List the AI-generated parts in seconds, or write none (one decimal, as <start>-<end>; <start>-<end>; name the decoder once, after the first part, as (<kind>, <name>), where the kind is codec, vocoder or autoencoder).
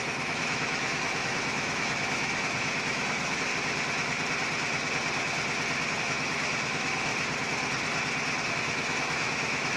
0.0-3.5 (autoencoder, DAC-VAE); 6.0-7.1; 8.5-9.8